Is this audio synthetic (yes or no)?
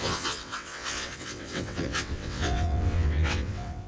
yes